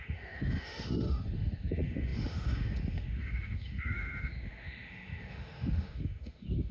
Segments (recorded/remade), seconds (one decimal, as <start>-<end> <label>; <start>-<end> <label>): 0.0-6.7 remade